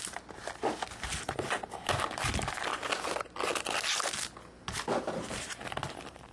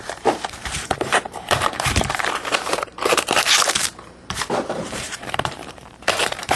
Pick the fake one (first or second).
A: second